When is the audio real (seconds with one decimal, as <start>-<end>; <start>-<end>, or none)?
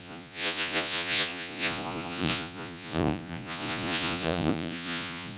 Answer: none